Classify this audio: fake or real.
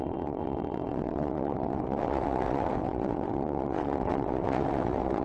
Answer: fake